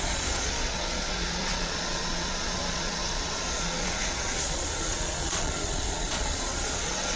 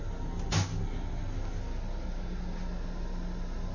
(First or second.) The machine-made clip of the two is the first